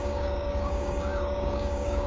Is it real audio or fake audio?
fake